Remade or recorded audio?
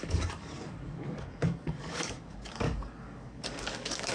remade